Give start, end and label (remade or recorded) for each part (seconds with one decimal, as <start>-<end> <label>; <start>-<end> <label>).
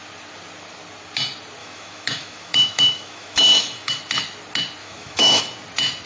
0.0-1.6 recorded; 1.6-3.9 remade; 3.9-4.8 recorded; 4.8-5.4 remade; 5.4-6.1 recorded